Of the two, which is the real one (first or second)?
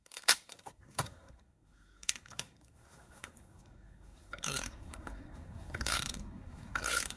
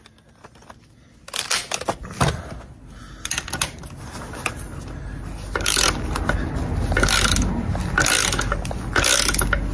second